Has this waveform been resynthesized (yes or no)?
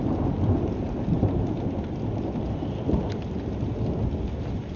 no